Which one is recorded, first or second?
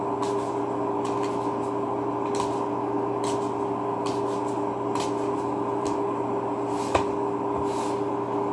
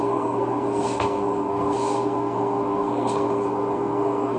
first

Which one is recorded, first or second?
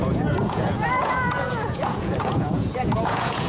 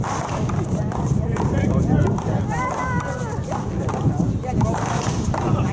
second